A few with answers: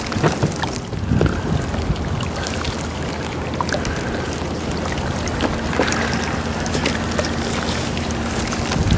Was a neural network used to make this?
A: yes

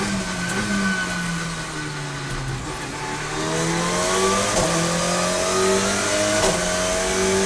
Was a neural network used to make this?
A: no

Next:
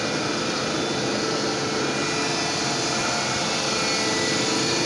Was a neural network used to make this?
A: no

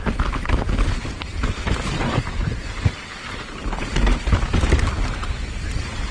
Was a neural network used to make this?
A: no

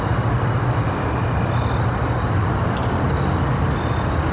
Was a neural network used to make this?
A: no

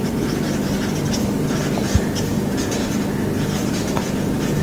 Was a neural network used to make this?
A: no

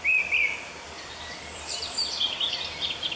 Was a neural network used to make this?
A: yes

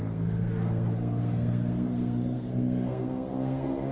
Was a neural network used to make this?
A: yes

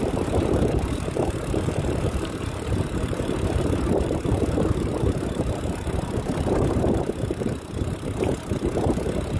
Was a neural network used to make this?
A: yes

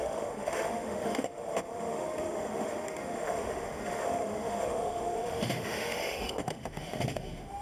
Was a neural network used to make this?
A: yes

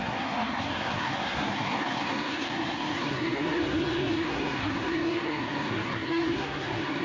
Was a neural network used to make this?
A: yes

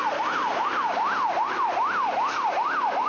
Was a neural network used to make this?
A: no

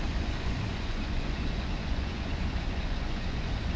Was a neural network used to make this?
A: yes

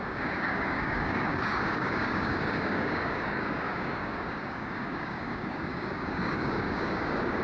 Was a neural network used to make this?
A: yes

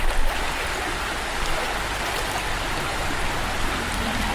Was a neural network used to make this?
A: no